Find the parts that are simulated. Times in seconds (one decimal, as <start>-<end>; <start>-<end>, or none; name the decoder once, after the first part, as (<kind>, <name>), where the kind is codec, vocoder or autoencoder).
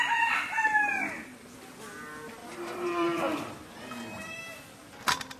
2.4-3.5 (vocoder, BigVGAN v2)